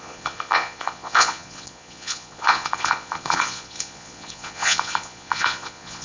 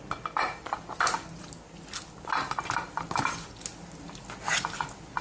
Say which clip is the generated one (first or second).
first